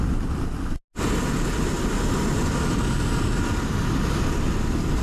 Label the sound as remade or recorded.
recorded